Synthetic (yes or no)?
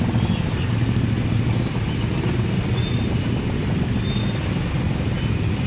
no